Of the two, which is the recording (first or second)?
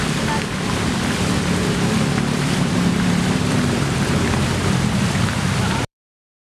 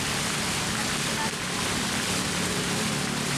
second